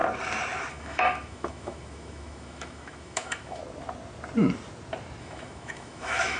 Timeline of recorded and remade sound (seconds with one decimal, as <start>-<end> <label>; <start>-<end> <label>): 0.0-0.7 recorded; 0.7-3.6 remade; 3.6-5.2 recorded; 5.2-6.4 remade